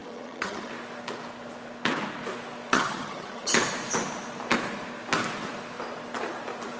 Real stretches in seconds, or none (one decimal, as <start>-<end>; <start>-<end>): 0.7-2.7; 3.5-6.8